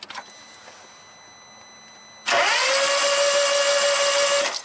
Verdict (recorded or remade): recorded